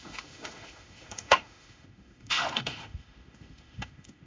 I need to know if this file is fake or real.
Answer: fake